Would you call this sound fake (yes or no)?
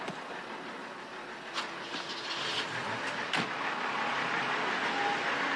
no